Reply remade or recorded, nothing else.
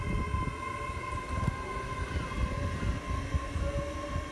recorded